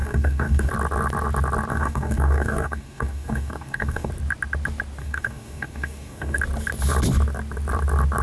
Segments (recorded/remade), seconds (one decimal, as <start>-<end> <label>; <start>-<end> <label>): 0.0-0.7 remade; 0.7-1.7 recorded; 1.7-4.1 remade; 4.1-5.0 recorded; 5.0-6.4 remade; 6.4-8.2 recorded